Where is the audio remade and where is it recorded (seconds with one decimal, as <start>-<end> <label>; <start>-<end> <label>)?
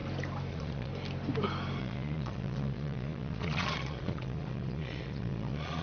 0.0-0.5 recorded; 0.5-0.9 remade; 0.9-1.8 recorded; 1.8-5.8 remade